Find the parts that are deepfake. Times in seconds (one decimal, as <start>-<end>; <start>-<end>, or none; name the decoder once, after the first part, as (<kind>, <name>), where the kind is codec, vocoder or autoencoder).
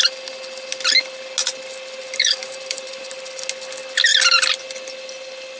2.0-3.1 (vocoder, BigVGAN v2)